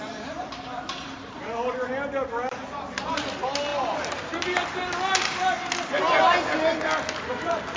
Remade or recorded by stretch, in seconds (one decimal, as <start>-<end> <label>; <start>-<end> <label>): 0.0-7.8 recorded